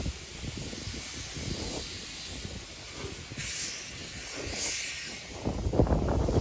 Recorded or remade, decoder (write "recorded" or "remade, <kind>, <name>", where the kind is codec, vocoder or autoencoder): recorded